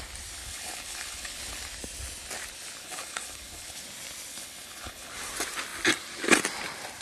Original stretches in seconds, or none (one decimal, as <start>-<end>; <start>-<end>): 0.0-0.4; 1.4-2.8; 3.8-4.3; 5.1-7.0